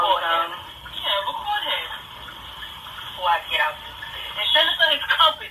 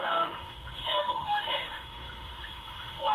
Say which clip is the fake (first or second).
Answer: second